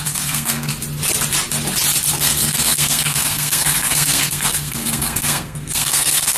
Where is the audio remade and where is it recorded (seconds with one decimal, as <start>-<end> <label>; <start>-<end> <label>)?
0.0-0.7 remade; 0.7-2.1 recorded; 2.1-6.4 remade